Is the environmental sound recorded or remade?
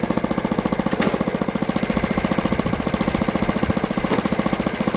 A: recorded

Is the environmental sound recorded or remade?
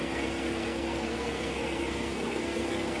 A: remade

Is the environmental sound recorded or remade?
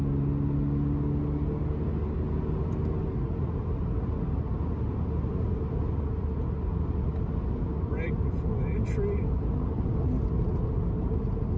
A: recorded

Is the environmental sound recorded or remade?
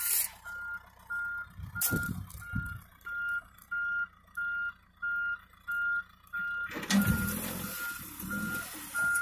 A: recorded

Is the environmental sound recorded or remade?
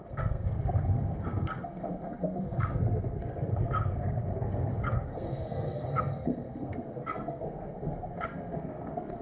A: remade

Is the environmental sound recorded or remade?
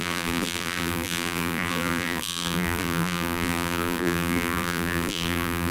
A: remade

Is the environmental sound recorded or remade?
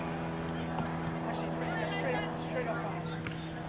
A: recorded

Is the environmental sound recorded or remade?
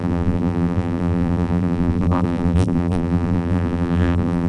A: remade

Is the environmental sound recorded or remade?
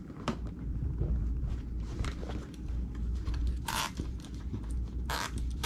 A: remade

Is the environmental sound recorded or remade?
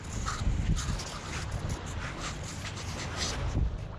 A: recorded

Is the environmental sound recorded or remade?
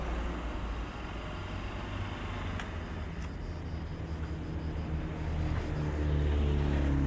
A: recorded